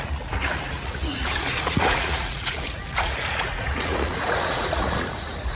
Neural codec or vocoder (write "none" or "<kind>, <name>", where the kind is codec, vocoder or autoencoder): vocoder, Vocos